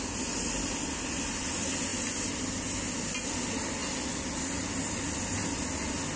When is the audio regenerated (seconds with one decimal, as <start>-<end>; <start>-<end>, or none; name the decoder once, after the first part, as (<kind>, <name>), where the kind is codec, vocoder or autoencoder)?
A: none